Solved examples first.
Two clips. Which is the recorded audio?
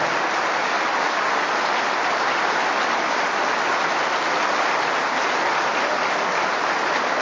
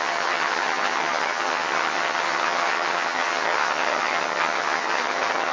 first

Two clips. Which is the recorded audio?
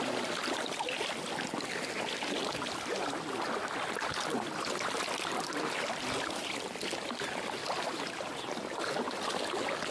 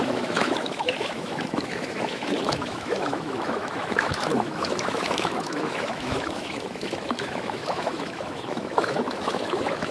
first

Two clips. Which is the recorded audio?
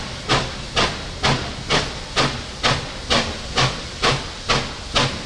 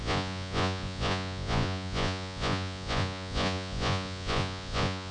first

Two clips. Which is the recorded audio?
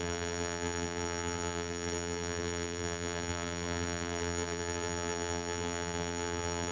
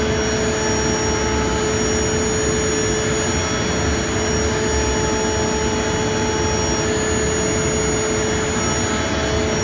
second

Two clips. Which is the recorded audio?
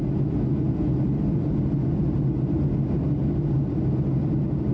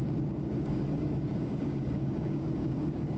first